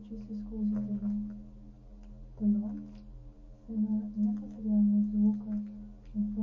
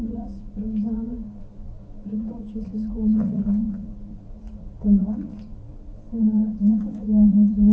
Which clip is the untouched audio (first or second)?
first